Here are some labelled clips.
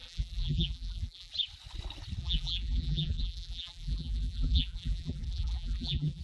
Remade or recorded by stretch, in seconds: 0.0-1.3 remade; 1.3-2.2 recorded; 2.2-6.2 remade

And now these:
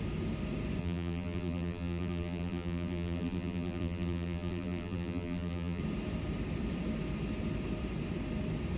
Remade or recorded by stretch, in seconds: 0.0-0.8 recorded; 0.8-5.8 remade; 5.8-8.8 recorded

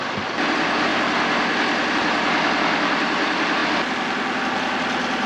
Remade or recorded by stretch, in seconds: 0.0-0.9 remade; 0.9-1.9 recorded; 1.9-3.6 remade; 3.6-4.4 recorded; 4.4-5.3 remade